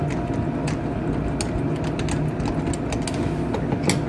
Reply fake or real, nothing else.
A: real